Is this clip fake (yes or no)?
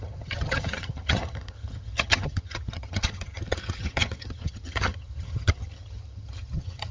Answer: yes